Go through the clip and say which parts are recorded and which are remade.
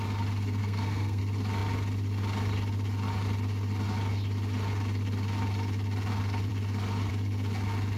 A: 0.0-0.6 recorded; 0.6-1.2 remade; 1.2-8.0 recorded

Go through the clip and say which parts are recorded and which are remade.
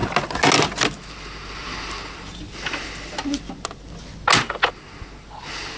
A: 0.0-5.8 recorded